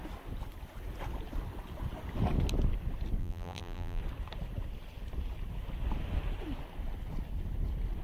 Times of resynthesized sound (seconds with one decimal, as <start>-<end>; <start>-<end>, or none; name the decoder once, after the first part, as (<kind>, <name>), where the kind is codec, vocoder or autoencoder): 3.2-4.0 (vocoder, BigVGAN v2)